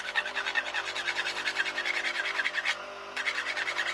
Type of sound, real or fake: real